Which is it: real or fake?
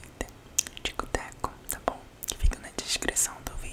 real